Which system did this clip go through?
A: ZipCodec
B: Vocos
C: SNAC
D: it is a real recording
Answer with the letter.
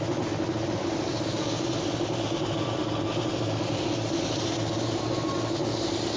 D